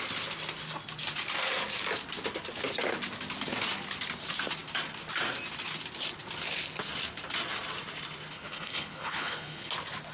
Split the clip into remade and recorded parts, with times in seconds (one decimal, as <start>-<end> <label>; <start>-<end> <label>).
0.0-8.3 recorded; 8.3-9.7 remade; 9.7-10.1 recorded